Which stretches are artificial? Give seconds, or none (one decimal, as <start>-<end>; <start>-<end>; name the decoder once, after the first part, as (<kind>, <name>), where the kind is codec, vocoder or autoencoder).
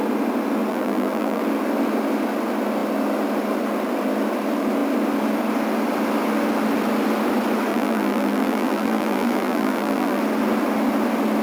0.7-1.4 (vocoder, BigVGAN v2); 7.7-10.2